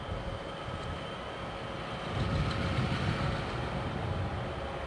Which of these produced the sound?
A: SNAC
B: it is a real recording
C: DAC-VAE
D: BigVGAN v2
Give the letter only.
B